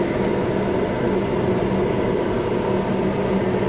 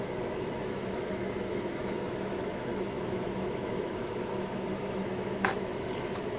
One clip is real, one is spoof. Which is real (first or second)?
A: first